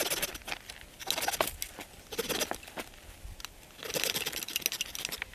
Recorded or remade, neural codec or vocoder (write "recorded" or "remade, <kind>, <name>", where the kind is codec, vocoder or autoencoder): recorded